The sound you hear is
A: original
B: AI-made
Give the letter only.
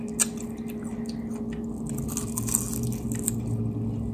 A